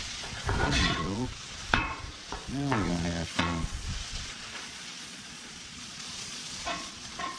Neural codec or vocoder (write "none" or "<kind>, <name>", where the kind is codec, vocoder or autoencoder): vocoder, Vocos